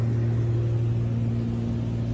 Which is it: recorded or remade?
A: recorded